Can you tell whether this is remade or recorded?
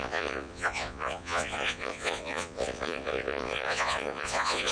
remade